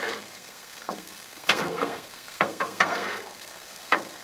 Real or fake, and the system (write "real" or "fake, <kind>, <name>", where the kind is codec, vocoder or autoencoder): fake, codec, SNAC